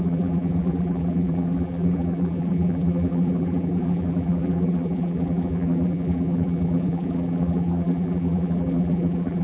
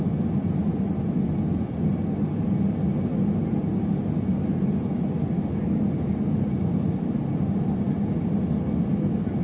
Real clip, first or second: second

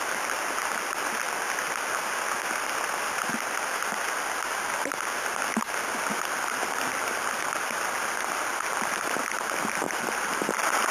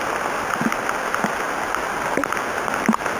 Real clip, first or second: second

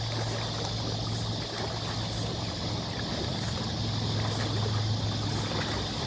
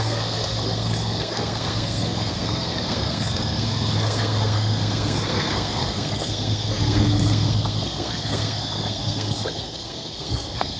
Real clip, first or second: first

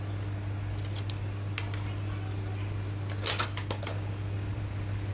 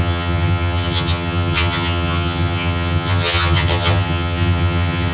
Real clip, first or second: first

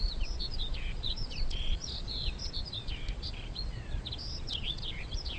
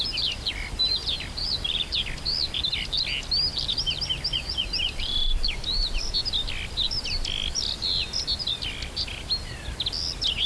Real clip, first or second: second